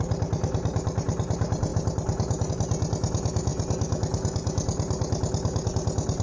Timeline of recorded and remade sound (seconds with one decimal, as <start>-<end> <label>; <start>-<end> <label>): 0.0-6.2 recorded